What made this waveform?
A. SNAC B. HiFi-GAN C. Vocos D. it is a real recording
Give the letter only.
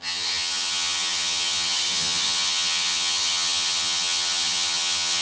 B